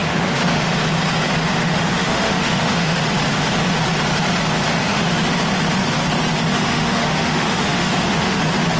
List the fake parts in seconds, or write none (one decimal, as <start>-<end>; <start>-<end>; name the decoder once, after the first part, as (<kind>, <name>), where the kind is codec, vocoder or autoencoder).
0.0-0.7 (autoencoder, DAC-VAE); 1.6-3.0; 4.7-5.2; 6.5-8.4